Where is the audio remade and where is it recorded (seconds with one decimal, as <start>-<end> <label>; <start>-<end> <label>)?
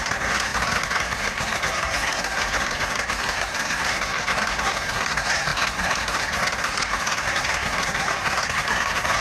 0.0-9.2 remade